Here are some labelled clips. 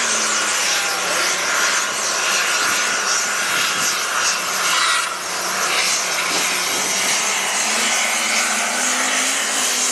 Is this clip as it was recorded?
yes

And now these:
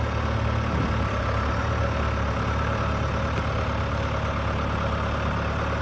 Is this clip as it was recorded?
yes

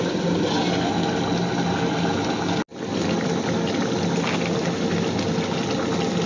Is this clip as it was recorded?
yes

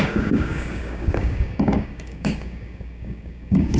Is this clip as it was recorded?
no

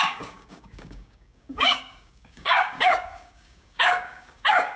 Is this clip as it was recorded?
no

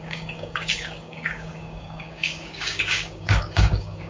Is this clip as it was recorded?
no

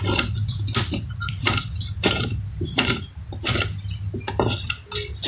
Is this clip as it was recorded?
yes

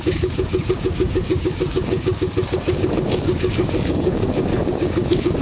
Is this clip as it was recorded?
no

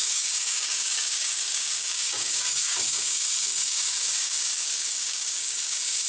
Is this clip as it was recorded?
no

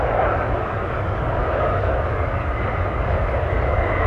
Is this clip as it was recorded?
no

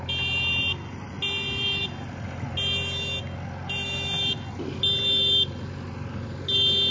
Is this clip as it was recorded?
yes